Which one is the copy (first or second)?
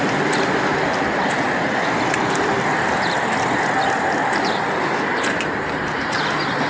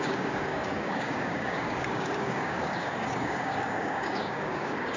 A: second